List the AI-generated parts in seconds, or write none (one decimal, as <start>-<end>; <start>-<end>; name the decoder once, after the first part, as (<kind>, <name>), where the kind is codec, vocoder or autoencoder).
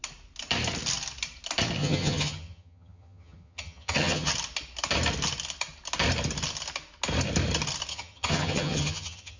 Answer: 1.8-4.3 (vocoder, HiFi-GAN); 7.9-9.4